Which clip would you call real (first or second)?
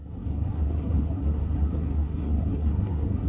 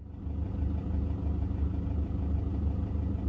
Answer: second